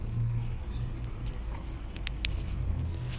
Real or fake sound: fake